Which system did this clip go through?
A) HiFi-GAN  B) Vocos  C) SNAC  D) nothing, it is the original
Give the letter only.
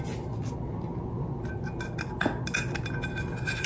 D